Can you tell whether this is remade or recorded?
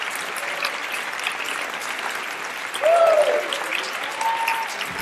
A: recorded